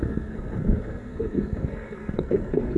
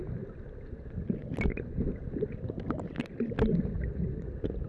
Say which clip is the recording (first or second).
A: second